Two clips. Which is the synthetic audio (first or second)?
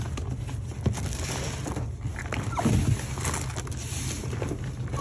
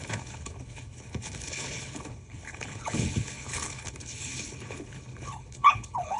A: second